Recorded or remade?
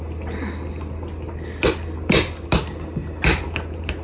recorded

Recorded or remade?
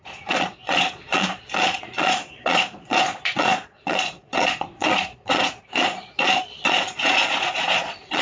remade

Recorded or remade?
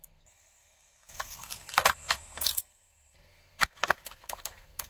remade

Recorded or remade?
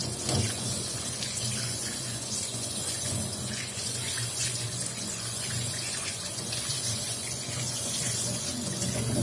remade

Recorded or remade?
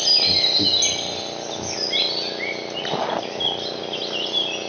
recorded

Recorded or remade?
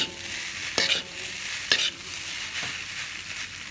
recorded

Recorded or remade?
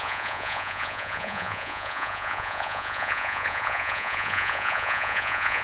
remade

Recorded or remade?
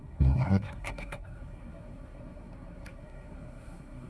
remade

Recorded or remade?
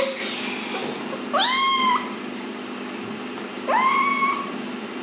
recorded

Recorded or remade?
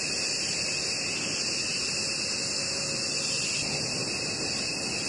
recorded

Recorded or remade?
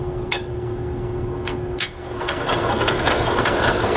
remade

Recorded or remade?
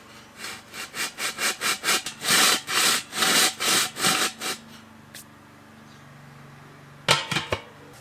recorded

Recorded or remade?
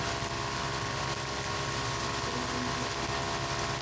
recorded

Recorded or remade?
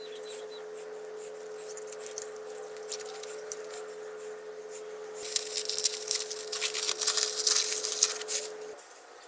recorded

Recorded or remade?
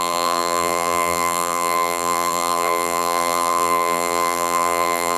remade